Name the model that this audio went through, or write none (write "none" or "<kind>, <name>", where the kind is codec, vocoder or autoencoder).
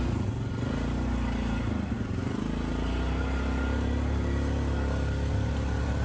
none